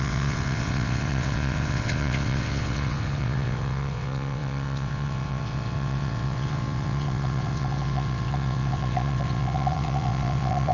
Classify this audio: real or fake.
fake